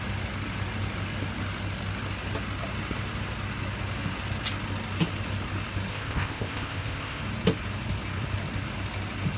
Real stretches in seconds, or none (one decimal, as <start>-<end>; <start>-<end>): 0.0-5.9; 7.2-9.4

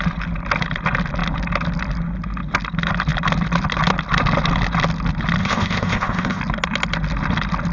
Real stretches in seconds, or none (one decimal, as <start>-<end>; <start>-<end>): 0.0-5.4; 6.4-7.7

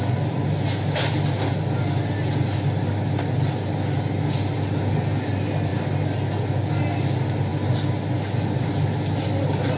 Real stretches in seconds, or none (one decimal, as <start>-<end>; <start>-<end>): 0.0-9.8